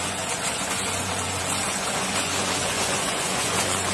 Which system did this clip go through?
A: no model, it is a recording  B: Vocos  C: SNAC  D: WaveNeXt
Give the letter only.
B